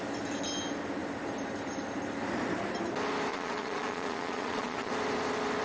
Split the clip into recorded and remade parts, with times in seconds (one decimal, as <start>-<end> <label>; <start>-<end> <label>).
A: 0.0-3.3 recorded; 3.3-4.9 remade; 4.9-5.6 recorded